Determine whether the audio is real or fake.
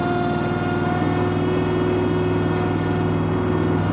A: real